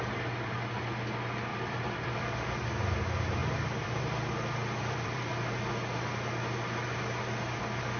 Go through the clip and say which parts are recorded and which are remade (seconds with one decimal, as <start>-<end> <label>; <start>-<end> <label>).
0.0-1.5 recorded; 1.5-2.6 remade; 2.6-3.4 recorded; 3.4-4.0 remade; 4.0-4.6 recorded; 4.6-5.3 remade; 5.3-8.0 recorded